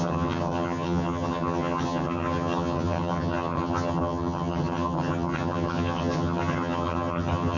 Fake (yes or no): yes